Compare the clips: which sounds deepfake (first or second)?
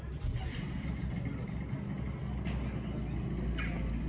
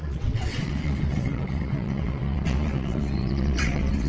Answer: second